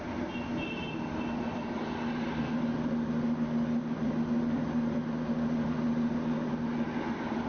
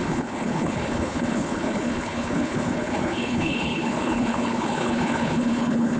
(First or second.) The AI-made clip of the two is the second